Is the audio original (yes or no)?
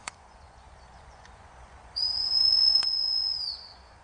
no